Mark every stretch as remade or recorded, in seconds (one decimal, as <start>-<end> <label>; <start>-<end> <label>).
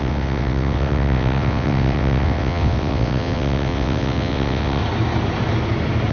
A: 0.0-4.8 remade; 4.8-6.1 recorded